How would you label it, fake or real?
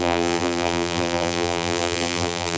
fake